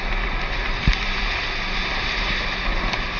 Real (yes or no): yes